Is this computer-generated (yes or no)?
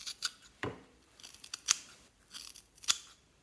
yes